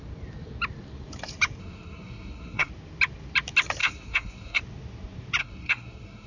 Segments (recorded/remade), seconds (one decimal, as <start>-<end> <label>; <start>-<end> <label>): 0.0-1.6 recorded; 1.6-2.7 remade; 2.7-3.8 recorded; 3.8-4.6 remade; 4.6-5.4 recorded; 5.4-6.3 remade